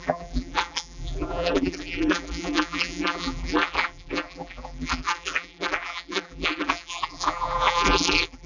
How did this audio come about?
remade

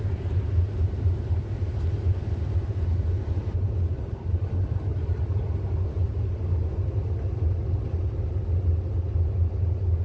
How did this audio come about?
recorded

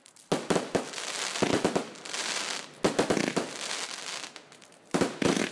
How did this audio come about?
recorded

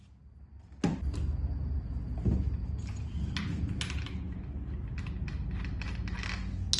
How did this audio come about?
recorded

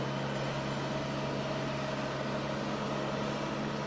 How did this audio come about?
recorded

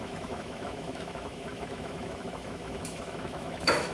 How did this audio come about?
remade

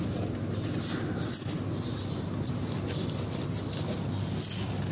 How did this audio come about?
recorded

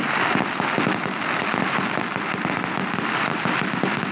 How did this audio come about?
recorded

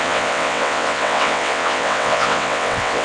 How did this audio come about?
remade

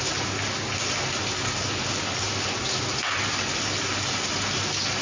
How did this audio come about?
recorded